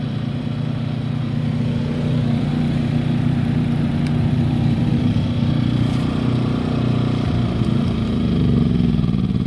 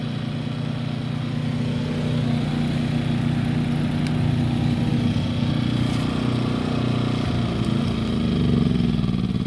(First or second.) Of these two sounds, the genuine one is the second